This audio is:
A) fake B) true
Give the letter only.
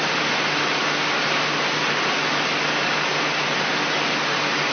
B